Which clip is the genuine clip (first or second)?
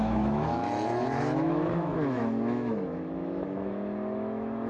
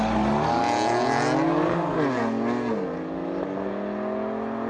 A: second